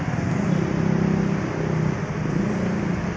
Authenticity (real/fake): real